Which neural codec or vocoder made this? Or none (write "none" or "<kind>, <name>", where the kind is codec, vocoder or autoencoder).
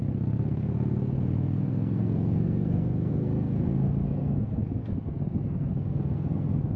codec, SNAC